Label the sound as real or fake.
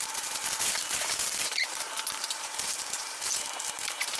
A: fake